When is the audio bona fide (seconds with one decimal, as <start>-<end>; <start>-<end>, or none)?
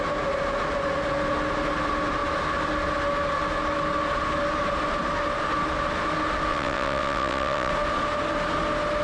0.0-6.5; 7.7-9.0